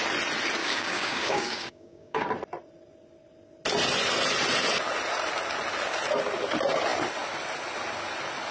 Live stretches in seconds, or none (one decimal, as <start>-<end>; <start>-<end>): 0.0-0.6; 2.3-8.5